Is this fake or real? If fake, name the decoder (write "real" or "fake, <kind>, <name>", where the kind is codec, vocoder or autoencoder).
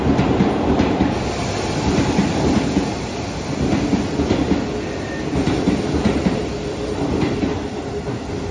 real